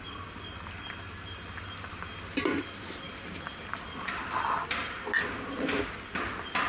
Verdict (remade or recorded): recorded